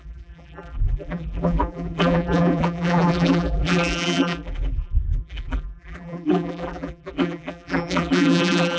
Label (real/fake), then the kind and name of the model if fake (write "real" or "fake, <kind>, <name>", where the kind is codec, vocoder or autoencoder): fake, vocoder, BigVGAN v2